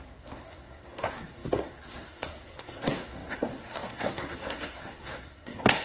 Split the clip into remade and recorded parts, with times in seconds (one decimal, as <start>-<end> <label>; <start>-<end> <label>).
0.0-5.8 remade